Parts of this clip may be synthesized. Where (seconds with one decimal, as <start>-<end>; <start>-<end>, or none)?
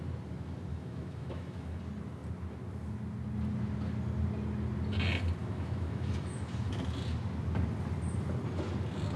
0.7-1.8; 5.4-6.7